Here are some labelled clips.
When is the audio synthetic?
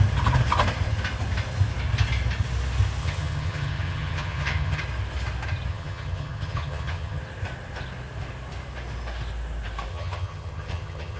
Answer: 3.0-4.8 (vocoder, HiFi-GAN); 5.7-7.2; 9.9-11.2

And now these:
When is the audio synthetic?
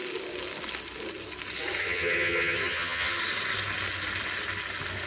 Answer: 1.8-3.2 (vocoder, HiFi-GAN)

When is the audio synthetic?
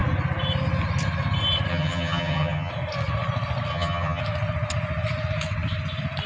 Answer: 1.7-2.7 (vocoder, HiFi-GAN); 3.7-4.2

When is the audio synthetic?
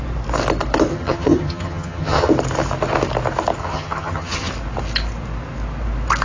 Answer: 0.9-2.3 (vocoder, HiFi-GAN); 3.6-4.5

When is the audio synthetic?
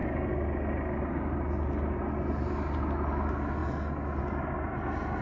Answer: none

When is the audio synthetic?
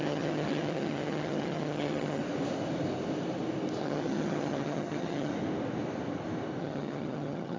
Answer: 0.0-2.2 (vocoder, HiFi-GAN); 3.8-5.3; 6.6-7.6